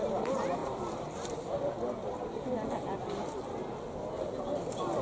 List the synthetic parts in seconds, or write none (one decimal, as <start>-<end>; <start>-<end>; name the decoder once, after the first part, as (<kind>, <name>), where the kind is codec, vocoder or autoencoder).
0.6-3.6 (vocoder, BigVGAN v2)